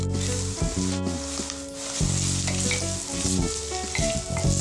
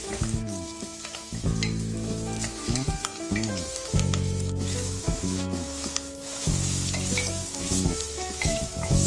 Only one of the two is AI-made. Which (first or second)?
second